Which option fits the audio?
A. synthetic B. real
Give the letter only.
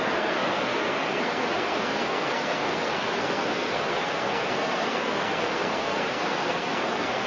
A